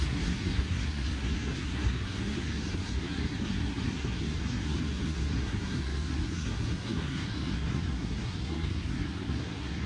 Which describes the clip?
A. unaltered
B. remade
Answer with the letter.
B